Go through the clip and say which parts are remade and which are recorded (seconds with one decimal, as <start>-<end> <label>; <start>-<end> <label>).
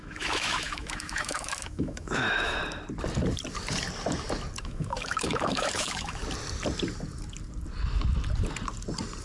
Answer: 0.0-2.6 remade; 2.6-4.6 recorded; 4.6-6.2 remade; 6.2-9.2 recorded